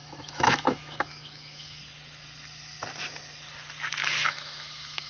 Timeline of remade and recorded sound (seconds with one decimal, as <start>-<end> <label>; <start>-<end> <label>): 0.0-1.8 remade; 1.8-4.0 recorded; 4.0-5.1 remade